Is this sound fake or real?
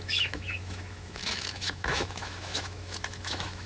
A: fake